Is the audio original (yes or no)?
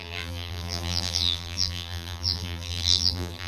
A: no